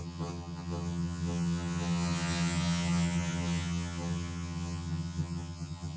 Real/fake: fake